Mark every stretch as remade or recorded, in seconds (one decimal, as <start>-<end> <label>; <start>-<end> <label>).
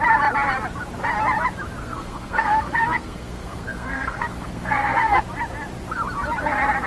0.0-1.8 recorded; 1.8-5.2 remade; 5.2-6.9 recorded